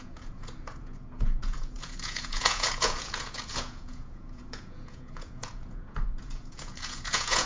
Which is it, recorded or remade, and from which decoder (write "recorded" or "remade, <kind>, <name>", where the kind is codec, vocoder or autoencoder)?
remade, vocoder, Vocos